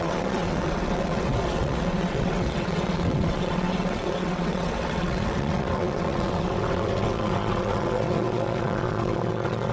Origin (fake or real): fake